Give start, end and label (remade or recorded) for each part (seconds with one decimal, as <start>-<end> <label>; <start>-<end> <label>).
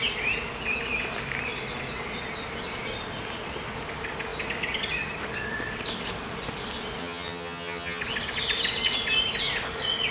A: 0.0-7.0 recorded; 7.0-8.0 remade; 8.0-10.1 recorded